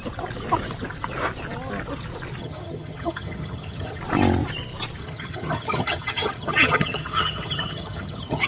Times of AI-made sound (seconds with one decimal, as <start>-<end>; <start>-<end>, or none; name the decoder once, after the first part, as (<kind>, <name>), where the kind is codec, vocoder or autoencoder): 2.4-4.0 (vocoder, HiFi-GAN); 5.0-8.5

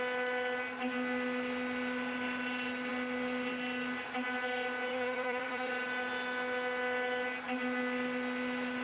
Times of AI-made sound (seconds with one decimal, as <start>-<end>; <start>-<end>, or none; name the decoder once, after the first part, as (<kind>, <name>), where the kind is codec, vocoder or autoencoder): 4.9-5.7 (vocoder, HiFi-GAN)

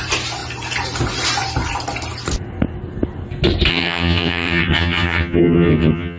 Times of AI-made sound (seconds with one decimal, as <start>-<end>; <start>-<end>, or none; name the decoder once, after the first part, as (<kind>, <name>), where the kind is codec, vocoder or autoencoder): 3.7-6.2 (vocoder, HiFi-GAN)

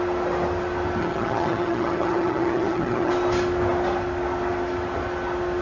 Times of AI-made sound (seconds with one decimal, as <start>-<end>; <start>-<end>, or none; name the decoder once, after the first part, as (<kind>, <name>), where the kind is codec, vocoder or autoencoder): 1.0-3.1 (vocoder, HiFi-GAN)

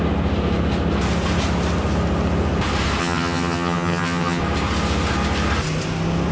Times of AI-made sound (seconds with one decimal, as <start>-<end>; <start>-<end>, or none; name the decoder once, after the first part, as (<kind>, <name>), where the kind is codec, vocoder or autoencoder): 3.0-4.4 (vocoder, HiFi-GAN)